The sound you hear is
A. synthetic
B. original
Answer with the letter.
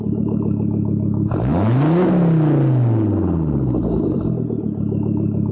B